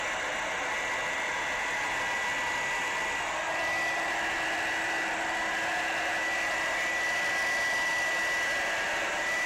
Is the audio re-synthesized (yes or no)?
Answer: no